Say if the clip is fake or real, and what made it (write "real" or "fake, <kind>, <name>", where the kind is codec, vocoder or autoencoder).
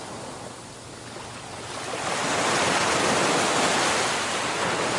real